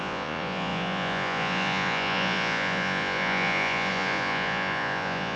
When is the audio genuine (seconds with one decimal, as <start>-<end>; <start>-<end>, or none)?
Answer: none